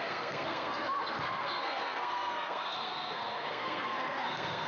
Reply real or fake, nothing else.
fake